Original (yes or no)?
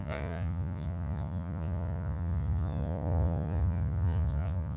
no